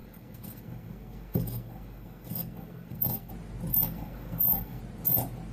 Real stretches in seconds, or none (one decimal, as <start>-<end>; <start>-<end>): 3.3-3.7; 4.8-5.5